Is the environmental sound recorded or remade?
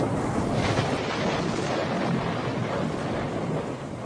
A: recorded